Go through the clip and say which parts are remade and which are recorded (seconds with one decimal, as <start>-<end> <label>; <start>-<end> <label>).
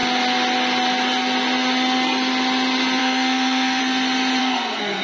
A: 0.0-3.0 recorded; 3.0-3.8 remade; 3.8-4.4 recorded; 4.4-5.0 remade